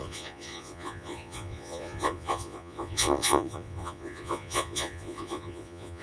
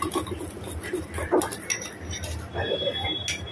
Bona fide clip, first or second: second